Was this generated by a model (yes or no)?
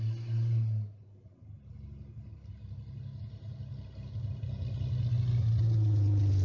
no